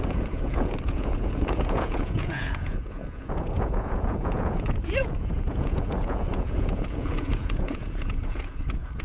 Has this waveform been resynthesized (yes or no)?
yes